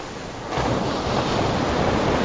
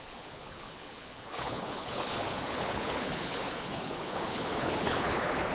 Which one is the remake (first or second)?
second